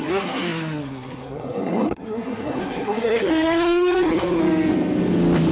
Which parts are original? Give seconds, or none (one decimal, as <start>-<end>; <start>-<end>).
4.4-5.5